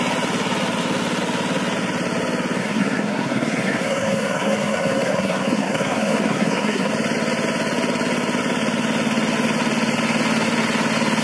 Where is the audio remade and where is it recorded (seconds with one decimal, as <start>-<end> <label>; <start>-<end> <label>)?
0.0-2.6 recorded; 2.6-6.9 remade; 6.9-11.2 recorded